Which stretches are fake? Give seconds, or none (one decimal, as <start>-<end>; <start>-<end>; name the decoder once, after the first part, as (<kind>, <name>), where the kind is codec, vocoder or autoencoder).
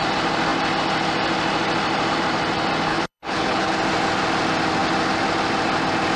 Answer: 2.9-3.7 (codec, HILCodec)